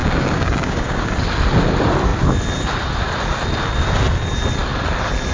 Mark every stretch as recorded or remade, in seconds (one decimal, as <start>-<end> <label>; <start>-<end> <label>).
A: 0.0-1.1 remade; 1.1-5.3 recorded